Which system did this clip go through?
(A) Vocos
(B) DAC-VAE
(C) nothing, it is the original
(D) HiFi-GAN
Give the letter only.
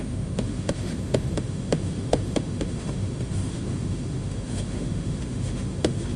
B